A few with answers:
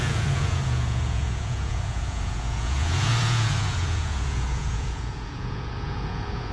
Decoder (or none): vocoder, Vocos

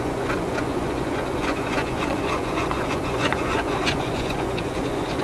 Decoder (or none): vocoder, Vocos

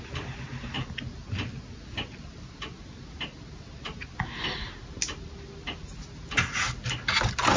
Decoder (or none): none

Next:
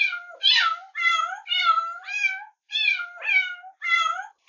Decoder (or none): none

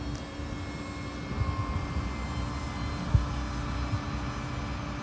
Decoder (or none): none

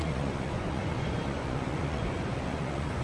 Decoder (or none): vocoder, Vocos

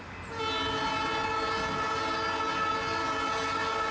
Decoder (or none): none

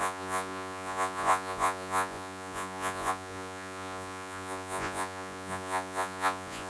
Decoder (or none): vocoder, Vocos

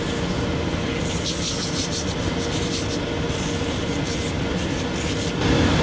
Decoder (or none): none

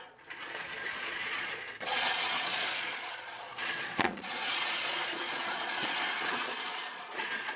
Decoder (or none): vocoder, Vocos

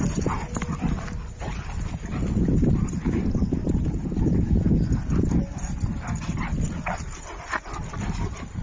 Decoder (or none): none